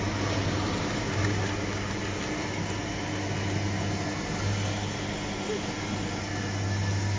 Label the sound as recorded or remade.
recorded